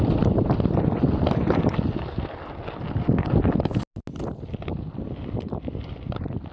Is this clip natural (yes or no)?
yes